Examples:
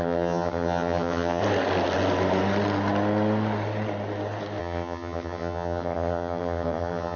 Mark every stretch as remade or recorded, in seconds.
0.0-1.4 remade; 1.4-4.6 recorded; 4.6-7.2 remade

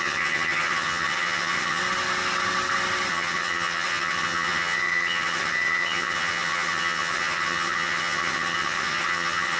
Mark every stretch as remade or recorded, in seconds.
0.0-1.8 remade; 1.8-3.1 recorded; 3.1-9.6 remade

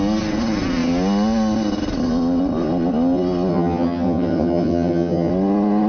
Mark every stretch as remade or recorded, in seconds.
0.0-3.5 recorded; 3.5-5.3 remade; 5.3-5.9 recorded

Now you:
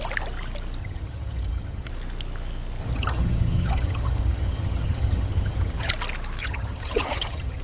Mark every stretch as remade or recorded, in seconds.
0.0-0.8 recorded; 0.8-1.9 remade; 1.9-2.8 recorded; 2.8-5.9 remade; 5.9-6.4 recorded; 6.4-7.6 remade

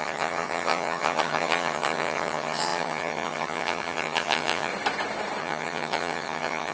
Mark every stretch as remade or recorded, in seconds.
0.0-4.7 remade; 4.7-5.4 recorded; 5.4-6.7 remade